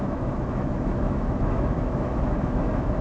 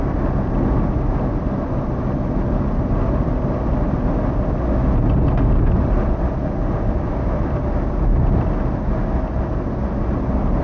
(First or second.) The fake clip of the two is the first